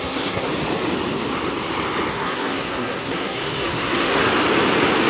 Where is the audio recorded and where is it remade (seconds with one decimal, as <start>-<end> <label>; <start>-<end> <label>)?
0.0-0.5 remade; 0.5-2.1 recorded; 2.1-4.2 remade; 4.2-5.1 recorded